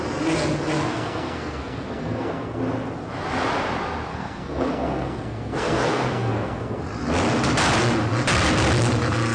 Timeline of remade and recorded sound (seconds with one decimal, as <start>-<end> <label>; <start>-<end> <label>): 0.0-0.9 recorded; 0.9-2.6 remade; 2.6-4.1 recorded; 4.1-6.8 remade; 6.8-9.3 recorded